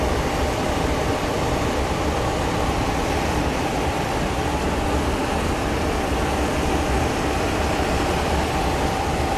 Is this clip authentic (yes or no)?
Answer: no